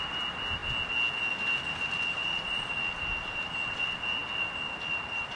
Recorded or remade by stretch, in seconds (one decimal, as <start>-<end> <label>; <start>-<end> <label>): 0.0-5.4 recorded